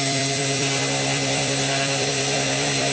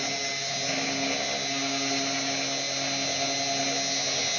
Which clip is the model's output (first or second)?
first